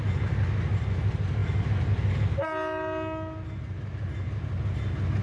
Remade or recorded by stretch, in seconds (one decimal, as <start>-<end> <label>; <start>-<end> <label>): 0.0-5.2 recorded